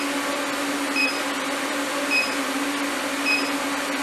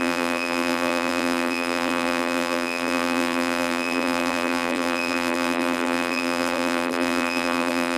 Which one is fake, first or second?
second